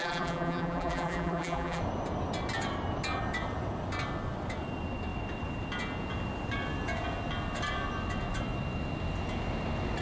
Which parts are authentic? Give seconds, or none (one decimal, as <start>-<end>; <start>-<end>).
1.8-10.0